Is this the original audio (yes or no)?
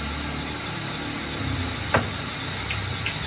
yes